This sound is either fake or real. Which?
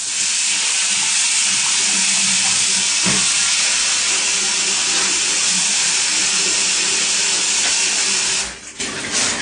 real